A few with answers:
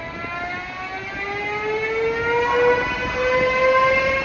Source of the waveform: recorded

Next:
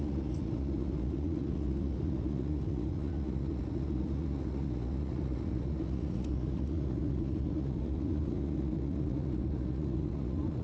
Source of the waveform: remade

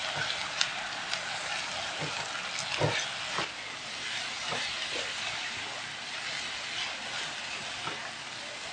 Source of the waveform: recorded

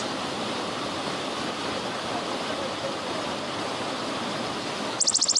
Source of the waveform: recorded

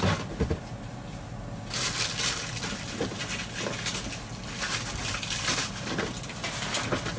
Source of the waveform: recorded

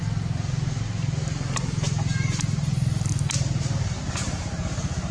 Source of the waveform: recorded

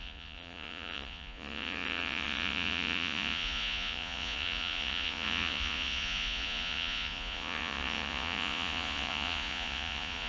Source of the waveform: remade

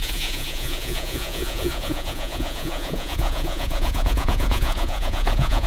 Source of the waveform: remade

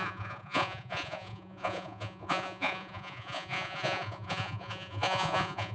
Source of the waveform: remade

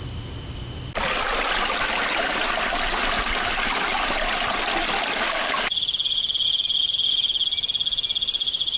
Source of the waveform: recorded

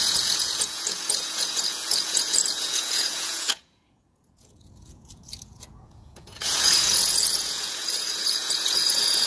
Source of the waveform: remade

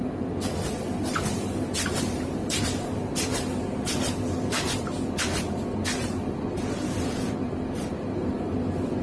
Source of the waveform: recorded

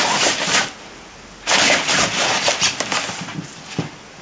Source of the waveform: recorded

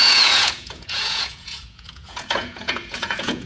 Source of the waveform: remade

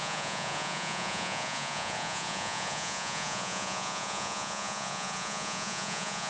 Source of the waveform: remade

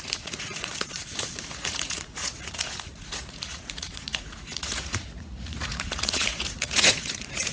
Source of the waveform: remade